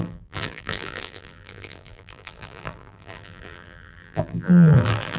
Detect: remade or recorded remade